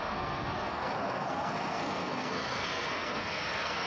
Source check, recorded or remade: remade